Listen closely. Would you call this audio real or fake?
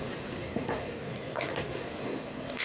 fake